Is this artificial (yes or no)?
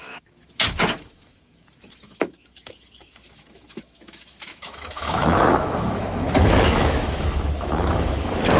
yes